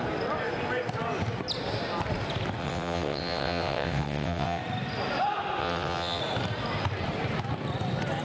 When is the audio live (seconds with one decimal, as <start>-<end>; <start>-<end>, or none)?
0.0-2.6; 4.6-5.6; 6.2-8.2

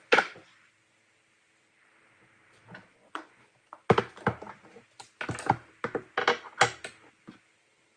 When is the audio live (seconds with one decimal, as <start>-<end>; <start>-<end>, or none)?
0.0-3.0; 3.6-8.0

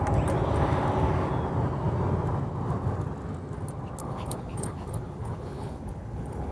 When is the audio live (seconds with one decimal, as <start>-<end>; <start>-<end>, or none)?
0.0-4.0

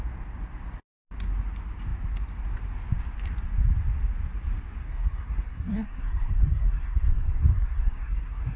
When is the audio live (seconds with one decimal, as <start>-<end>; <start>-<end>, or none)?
0.0-4.8

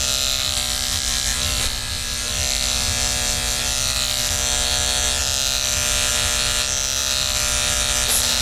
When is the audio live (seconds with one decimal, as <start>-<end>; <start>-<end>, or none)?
0.0-8.4

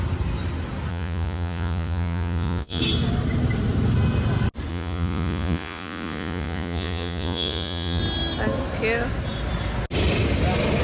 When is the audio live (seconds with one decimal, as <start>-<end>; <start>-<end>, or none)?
0.0-0.9; 2.8-4.7; 8.0-10.8